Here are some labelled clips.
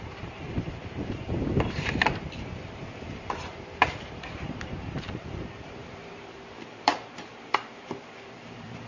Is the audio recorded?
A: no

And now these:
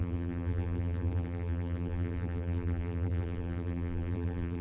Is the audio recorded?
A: no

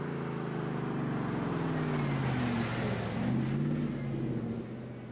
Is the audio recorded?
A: yes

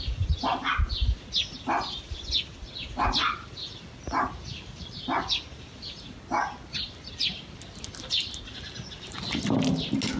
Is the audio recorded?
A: yes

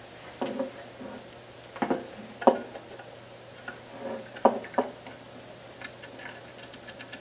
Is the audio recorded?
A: yes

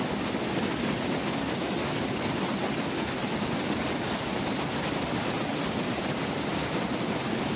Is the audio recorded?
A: yes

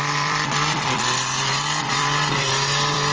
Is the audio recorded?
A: no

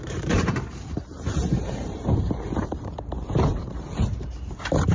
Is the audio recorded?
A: no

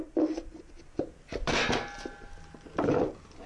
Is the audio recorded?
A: yes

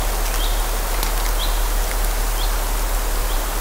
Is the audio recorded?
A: yes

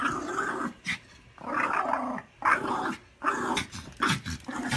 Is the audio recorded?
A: yes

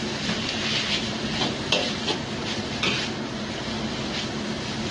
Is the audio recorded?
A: yes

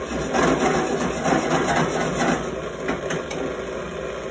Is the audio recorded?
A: yes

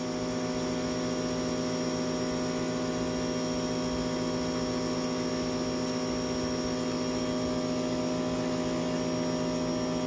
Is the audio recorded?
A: yes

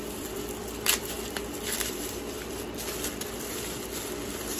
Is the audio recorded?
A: no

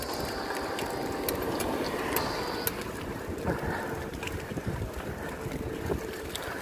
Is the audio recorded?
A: yes